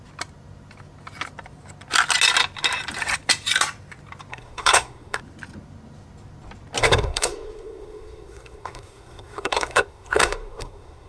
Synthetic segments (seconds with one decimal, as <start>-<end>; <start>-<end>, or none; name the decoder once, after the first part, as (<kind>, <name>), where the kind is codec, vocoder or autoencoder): 4.3-5.2 (codec, SNAC); 6.8-11.1